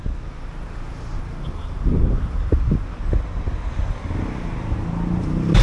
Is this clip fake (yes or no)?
no